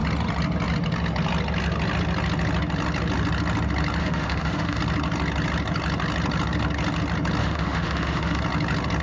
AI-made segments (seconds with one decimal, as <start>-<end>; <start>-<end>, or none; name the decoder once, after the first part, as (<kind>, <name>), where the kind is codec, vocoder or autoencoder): 4.0-4.8 (autoencoder, DAC-VAE); 7.4-8.4

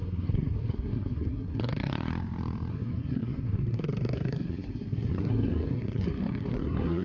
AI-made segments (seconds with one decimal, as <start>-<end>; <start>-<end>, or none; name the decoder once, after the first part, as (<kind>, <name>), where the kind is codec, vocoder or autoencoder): 0.0-2.1 (codec, SNAC); 2.7-7.0

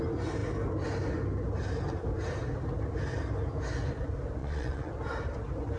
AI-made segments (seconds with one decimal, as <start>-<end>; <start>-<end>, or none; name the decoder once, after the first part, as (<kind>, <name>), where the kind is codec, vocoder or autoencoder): 4.4-4.9 (vocoder, Vocos)

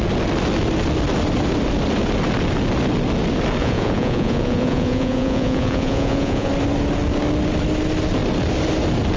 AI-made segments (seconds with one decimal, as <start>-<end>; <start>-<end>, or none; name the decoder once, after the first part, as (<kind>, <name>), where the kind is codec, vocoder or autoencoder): 3.6-6.5 (vocoder, Vocos)

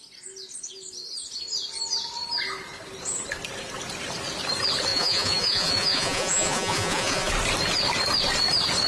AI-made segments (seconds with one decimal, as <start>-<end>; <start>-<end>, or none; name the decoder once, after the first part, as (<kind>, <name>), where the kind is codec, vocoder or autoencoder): 4.9-7.3 (vocoder, Vocos)

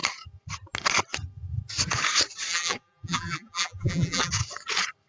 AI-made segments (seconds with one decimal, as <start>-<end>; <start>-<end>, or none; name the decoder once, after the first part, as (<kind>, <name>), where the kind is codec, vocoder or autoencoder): 2.5-4.3 (vocoder, BigVGAN v2)